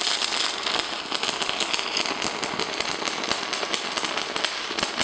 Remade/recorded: recorded